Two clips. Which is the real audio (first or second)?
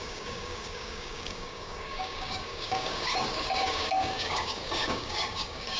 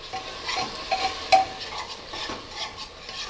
second